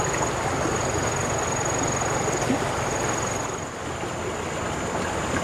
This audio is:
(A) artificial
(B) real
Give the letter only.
B